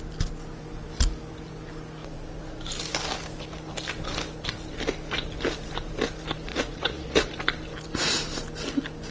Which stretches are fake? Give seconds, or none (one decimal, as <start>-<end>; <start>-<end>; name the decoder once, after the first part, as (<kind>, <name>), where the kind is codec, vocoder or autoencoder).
6.5-7.3 (vocoder, Vocos)